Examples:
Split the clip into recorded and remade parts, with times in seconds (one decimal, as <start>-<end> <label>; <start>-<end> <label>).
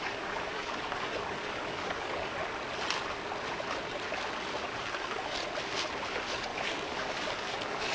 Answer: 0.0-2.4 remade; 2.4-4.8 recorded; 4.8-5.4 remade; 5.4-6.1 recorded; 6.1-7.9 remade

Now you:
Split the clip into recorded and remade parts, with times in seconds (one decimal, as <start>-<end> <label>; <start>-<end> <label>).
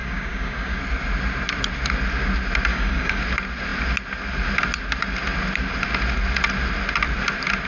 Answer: 0.0-0.8 remade; 0.8-2.7 recorded; 2.7-3.2 remade; 3.2-7.7 recorded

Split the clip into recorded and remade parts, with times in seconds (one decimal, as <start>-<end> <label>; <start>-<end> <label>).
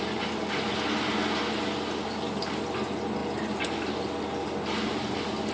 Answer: 0.0-5.5 recorded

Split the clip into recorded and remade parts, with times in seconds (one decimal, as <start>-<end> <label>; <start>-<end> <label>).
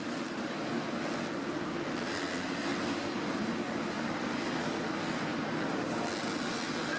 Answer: 0.0-7.0 recorded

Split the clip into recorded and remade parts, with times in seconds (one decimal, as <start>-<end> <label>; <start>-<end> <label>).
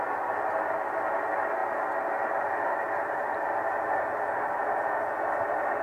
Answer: 0.0-5.8 recorded